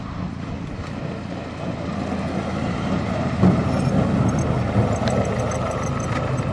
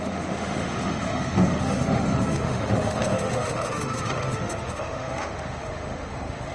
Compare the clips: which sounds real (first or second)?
first